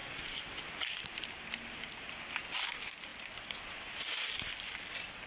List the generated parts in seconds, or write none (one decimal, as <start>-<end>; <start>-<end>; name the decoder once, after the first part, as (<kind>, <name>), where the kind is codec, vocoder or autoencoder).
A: none